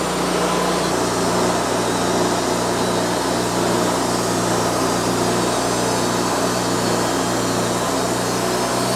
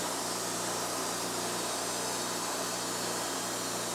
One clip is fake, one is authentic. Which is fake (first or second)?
second